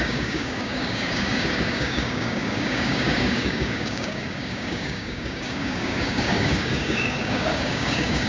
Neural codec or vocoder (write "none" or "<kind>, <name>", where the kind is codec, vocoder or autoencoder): codec, DAC